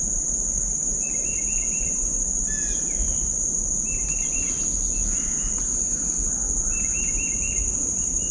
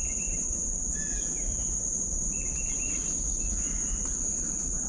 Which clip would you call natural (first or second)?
first